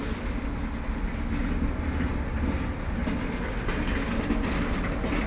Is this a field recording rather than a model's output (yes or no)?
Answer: yes